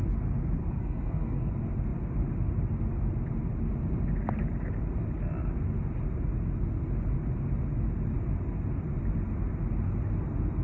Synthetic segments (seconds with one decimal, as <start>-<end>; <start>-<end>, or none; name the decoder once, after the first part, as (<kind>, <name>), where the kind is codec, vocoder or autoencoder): 0.6-1.5 (codec, SNAC)